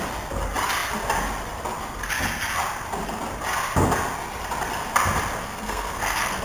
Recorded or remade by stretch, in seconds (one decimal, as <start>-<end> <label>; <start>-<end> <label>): 0.0-5.4 recorded; 5.4-6.4 remade